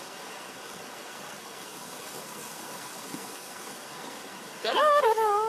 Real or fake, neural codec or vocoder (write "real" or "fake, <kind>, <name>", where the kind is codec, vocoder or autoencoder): fake, codec, SNAC